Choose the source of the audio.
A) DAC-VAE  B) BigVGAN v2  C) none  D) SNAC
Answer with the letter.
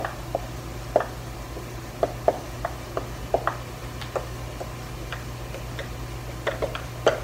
C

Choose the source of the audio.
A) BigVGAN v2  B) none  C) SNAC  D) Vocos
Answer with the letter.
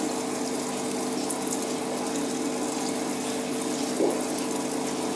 B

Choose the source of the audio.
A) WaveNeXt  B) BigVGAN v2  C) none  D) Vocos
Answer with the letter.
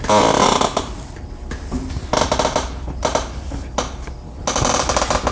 C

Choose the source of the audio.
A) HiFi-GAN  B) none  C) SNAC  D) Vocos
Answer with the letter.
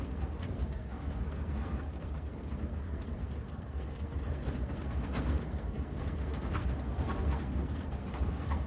C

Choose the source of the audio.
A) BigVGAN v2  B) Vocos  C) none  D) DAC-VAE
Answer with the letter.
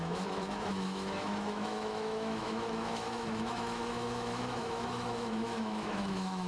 D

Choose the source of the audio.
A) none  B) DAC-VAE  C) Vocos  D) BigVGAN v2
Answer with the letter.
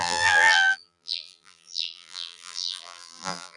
D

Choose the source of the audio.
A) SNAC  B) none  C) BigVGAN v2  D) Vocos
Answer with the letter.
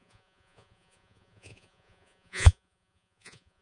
D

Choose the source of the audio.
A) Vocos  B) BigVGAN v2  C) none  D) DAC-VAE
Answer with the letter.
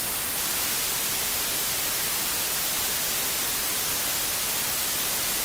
C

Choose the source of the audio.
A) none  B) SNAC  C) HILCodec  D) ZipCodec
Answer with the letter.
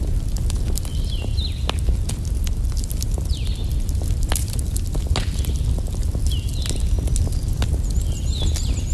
A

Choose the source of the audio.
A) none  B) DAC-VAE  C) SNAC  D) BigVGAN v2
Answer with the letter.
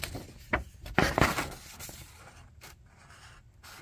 A